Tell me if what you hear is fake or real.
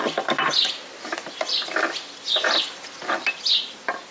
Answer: fake